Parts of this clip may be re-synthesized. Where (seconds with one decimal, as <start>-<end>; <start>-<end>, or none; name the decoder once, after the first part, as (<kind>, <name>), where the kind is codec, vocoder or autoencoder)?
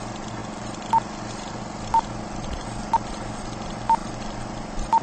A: none